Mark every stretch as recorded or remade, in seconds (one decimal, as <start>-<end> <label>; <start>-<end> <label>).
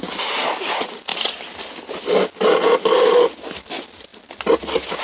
0.0-5.0 recorded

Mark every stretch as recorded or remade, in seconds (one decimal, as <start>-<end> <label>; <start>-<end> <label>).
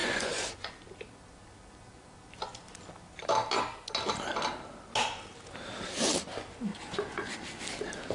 0.0-0.7 remade; 0.7-6.7 recorded; 6.7-7.3 remade; 7.3-8.1 recorded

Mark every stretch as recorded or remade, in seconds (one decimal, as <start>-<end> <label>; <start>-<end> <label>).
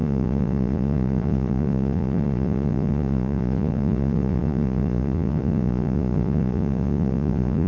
0.0-7.7 remade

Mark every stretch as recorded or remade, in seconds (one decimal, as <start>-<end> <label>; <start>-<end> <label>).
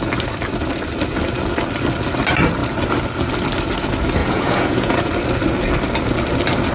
0.0-4.2 recorded; 4.2-5.1 remade; 5.1-6.7 recorded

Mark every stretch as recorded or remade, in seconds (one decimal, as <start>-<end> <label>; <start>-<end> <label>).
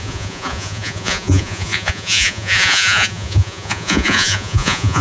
0.0-5.0 remade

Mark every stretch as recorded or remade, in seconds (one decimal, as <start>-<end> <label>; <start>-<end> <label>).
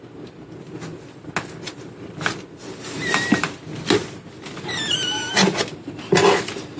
0.0-6.8 recorded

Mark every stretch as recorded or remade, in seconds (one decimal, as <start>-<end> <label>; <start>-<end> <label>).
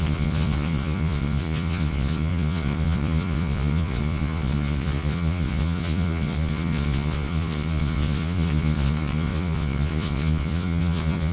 0.0-11.3 remade